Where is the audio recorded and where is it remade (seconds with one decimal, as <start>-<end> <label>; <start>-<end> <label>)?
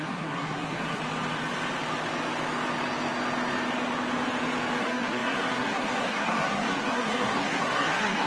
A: 0.0-1.0 remade; 1.0-4.8 recorded; 4.8-8.3 remade